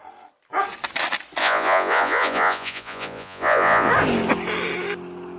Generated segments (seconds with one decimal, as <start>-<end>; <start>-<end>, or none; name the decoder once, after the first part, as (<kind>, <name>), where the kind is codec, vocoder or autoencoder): 1.4-3.9 (vocoder, Vocos)